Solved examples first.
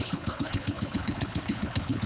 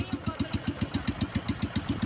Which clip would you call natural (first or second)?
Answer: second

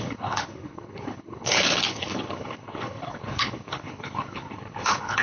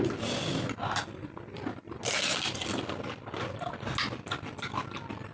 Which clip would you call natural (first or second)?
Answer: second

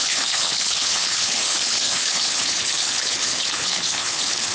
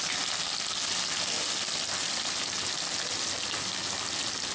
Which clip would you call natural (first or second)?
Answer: second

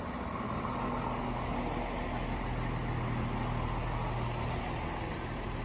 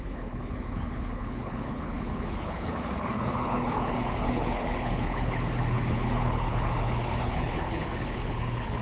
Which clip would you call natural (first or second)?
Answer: first